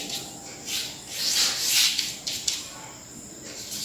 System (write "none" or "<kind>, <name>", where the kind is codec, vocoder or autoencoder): vocoder, BigVGAN v2